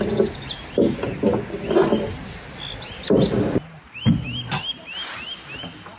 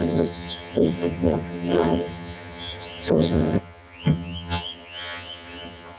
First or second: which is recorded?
first